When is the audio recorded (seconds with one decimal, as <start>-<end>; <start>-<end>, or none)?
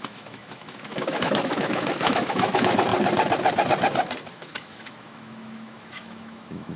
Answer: 2.9-4.3